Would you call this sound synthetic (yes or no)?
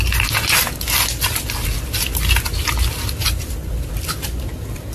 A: no